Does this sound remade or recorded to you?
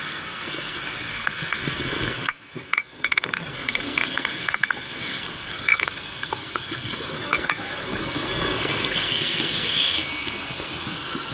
remade